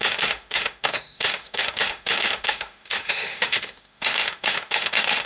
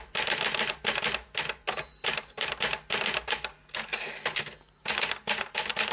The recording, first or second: second